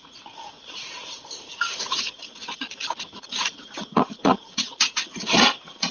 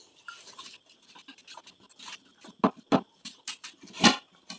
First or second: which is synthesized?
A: first